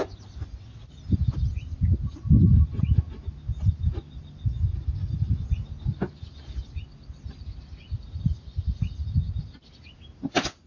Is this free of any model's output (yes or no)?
yes